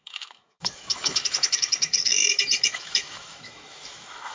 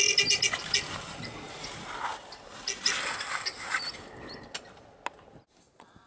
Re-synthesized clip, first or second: first